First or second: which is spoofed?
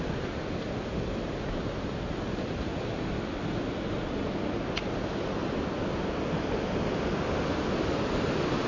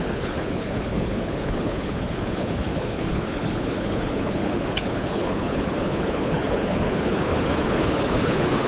second